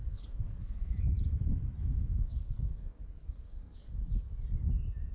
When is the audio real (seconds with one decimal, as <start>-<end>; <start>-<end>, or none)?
1.0-1.8; 3.9-5.1